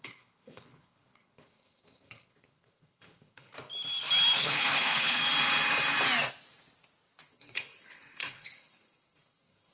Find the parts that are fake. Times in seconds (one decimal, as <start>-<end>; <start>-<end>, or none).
0.0-3.5; 4.4-5.2; 7.3-9.7